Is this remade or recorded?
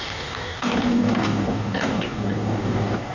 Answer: remade